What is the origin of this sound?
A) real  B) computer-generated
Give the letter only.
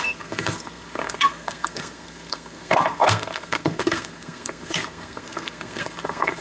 B